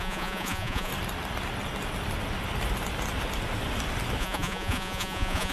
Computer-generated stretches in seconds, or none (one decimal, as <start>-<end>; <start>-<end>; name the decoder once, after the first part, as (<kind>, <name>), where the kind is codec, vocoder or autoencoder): 0.0-0.9 (vocoder, Vocos); 4.2-5.5